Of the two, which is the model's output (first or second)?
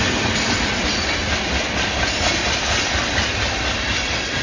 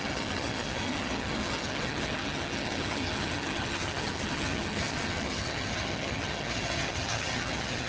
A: second